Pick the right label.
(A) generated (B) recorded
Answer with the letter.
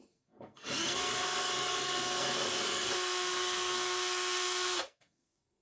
A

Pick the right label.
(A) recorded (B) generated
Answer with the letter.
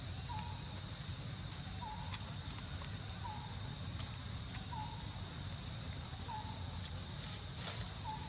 A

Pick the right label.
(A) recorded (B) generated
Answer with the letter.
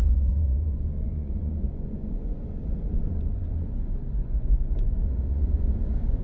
B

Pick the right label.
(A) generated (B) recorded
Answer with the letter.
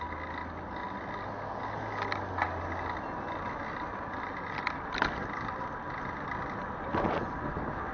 B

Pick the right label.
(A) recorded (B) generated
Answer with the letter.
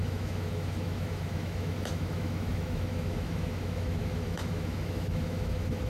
B